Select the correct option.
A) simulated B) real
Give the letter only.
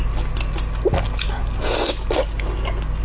B